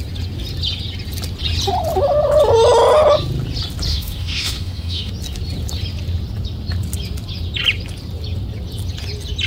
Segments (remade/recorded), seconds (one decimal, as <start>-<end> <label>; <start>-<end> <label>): 0.0-3.9 recorded; 3.9-5.1 remade; 5.1-9.5 recorded